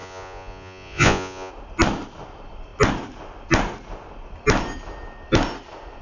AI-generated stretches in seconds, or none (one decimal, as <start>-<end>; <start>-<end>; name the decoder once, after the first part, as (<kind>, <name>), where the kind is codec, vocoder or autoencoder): 0.0-1.5 (vocoder, Vocos)